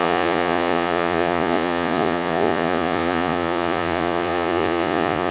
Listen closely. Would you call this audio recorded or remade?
remade